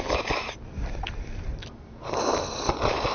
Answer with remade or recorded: recorded